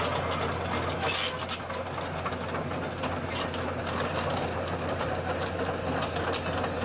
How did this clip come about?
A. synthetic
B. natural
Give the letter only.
B